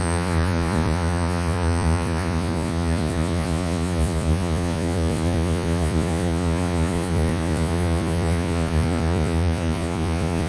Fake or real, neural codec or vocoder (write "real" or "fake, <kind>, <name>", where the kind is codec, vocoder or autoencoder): fake, vocoder, Vocos